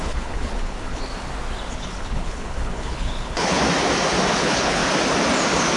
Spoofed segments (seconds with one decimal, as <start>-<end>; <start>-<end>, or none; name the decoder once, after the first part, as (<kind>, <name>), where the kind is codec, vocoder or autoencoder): 0.0-1.1 (codec, HILCodec); 1.7-3.6; 4.3-4.8